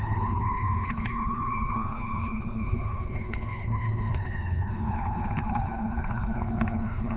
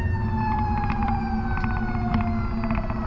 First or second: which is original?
second